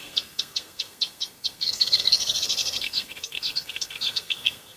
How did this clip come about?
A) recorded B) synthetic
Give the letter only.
B